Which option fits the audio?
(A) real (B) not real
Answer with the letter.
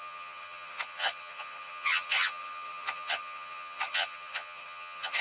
B